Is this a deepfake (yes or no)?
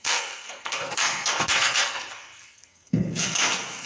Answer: yes